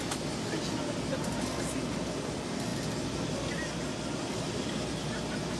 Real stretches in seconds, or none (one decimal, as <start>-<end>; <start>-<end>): 0.0-5.6